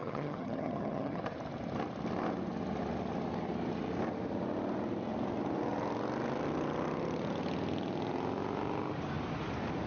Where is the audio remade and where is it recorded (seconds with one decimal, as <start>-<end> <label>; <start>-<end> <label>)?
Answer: 0.0-1.2 remade; 1.2-9.9 recorded